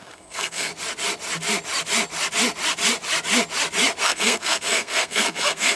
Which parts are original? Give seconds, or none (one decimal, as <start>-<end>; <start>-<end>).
0.7-4.0